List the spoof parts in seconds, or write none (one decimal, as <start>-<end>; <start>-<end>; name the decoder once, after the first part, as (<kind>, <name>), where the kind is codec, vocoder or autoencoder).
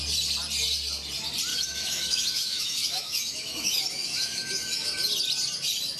1.5-5.1 (autoencoder, DAC-VAE)